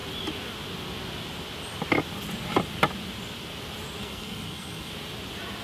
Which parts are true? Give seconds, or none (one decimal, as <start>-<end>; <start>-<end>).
0.0-4.0; 4.9-5.6